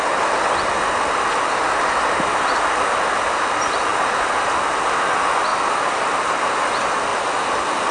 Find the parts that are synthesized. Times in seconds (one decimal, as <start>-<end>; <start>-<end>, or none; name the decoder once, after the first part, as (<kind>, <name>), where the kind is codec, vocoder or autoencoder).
none